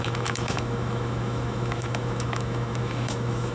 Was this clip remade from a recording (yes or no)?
yes